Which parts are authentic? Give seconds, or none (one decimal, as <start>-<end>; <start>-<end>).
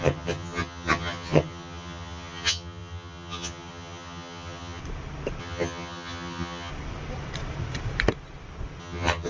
4.8-5.4; 6.7-8.8